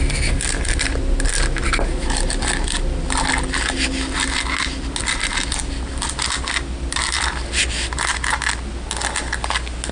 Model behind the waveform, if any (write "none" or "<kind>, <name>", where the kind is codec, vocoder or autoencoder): none